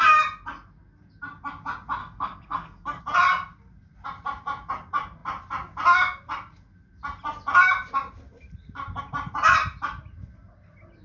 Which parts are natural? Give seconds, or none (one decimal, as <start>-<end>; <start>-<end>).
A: 0.0-2.0; 3.0-11.0